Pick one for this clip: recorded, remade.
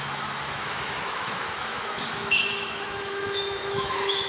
remade